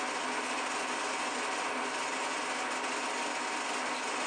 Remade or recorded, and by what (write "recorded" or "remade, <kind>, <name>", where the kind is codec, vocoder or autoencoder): recorded